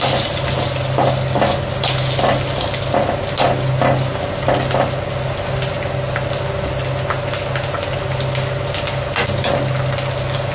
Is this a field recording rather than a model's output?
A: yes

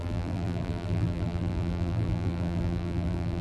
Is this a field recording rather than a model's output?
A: no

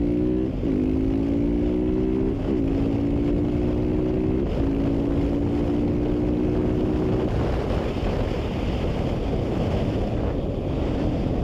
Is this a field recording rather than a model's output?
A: yes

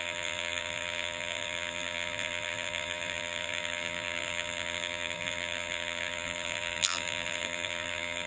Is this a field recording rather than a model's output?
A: no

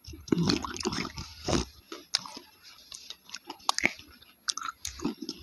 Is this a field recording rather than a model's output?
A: yes